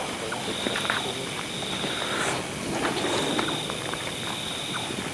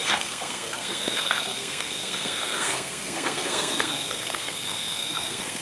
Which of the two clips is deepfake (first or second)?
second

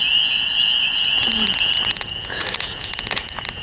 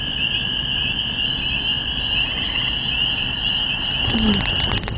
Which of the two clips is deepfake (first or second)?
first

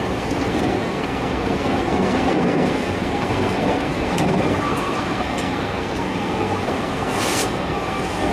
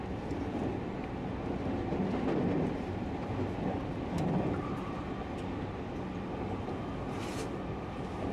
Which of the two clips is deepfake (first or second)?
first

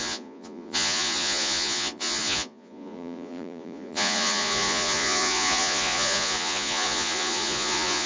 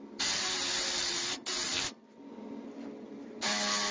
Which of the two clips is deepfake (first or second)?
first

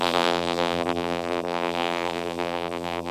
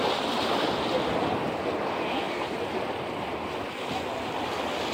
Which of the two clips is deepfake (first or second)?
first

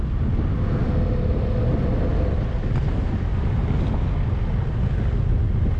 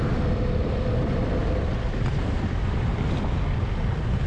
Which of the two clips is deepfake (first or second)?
second